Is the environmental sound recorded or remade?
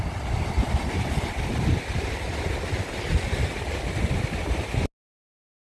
recorded